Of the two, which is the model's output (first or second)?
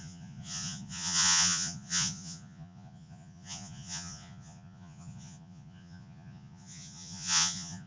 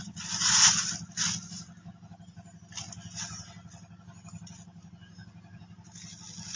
first